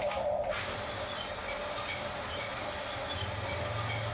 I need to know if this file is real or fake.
real